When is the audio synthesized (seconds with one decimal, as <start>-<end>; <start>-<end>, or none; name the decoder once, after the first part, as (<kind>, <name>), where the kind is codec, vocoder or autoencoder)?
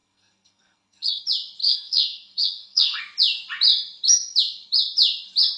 0.0-1.2 (codec, SNAC); 1.6-3.0